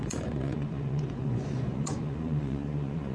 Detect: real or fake fake